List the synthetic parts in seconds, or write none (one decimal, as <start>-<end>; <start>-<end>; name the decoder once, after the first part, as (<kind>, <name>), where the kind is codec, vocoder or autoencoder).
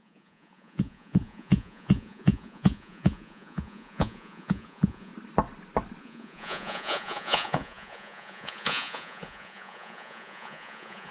0.0-5.1 (vocoder, Vocos); 6.0-11.1